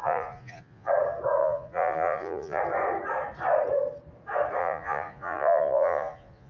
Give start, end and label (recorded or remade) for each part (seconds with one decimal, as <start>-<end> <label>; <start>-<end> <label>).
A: 0.0-0.9 remade; 0.9-1.4 recorded; 1.4-2.6 remade; 2.6-4.6 recorded; 4.6-6.5 remade